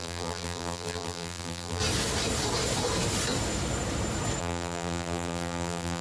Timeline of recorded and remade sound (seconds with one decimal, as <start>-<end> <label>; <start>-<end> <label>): 0.0-1.8 remade; 1.8-4.4 recorded; 4.4-6.0 remade